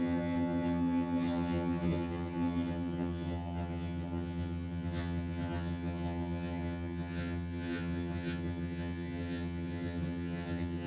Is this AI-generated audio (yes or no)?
yes